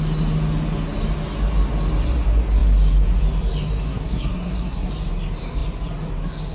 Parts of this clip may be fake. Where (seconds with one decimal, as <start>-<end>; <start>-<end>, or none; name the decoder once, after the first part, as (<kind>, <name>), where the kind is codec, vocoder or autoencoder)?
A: 3.9-4.9 (codec, SNAC)